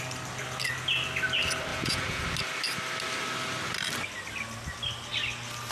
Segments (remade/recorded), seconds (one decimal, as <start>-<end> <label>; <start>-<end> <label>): 0.0-1.7 recorded; 1.7-2.2 remade; 2.2-5.7 recorded